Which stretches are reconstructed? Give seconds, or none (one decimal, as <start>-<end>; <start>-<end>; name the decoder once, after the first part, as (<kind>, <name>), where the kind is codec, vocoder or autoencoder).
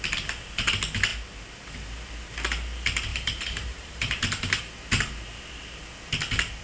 3.1-4.7 (vocoder, BigVGAN v2)